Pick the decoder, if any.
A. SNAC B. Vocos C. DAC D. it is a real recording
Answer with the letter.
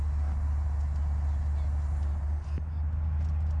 D